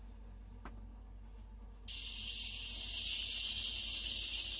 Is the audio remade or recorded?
recorded